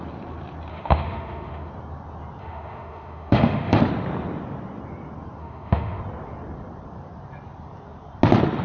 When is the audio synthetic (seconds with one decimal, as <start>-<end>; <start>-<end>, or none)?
0.7-1.7; 2.4-3.8; 5.4-6.0

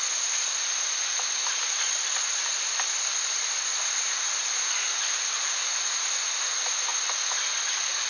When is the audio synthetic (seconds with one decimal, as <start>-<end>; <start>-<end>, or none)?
none

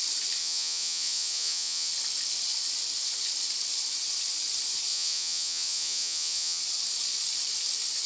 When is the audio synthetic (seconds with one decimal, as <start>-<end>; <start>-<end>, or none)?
0.4-1.9; 4.9-6.6